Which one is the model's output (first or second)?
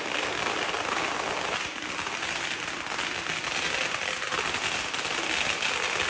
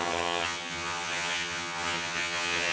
second